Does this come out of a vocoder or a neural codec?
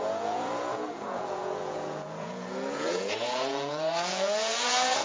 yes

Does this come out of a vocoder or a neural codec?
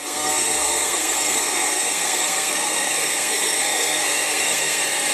yes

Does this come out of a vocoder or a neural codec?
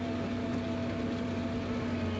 no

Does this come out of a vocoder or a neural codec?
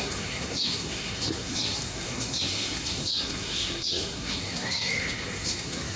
yes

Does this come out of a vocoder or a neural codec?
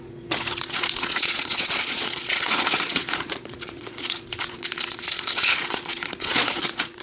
yes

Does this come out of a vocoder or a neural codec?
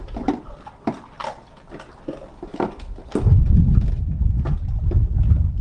no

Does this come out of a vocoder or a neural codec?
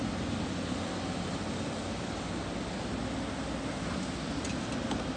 no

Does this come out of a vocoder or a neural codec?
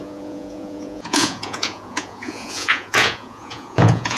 yes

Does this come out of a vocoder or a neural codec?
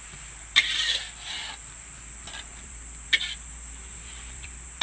yes